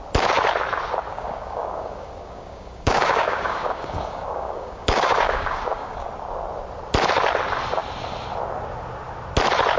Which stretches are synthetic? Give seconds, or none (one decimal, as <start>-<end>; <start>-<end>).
1.1-6.1